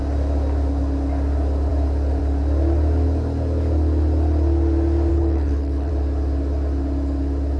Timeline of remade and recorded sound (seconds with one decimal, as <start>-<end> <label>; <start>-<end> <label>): 0.0-5.1 recorded; 5.1-5.9 remade; 5.9-7.6 recorded